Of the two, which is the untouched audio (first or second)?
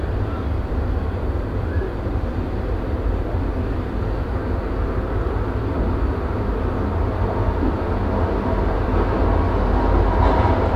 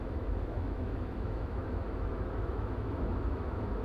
first